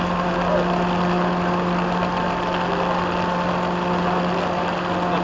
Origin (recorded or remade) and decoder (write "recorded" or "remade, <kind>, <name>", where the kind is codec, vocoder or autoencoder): recorded